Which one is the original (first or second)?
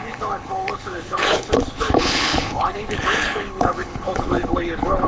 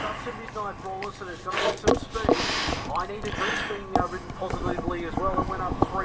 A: second